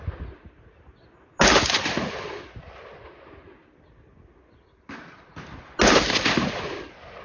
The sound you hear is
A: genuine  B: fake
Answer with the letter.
A